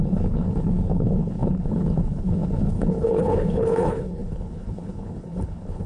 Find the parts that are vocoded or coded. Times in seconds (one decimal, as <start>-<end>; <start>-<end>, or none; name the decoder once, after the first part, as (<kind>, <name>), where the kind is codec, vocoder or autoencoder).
0.0-5.9 (codec, HILCodec)